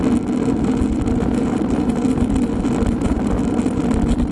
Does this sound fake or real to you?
real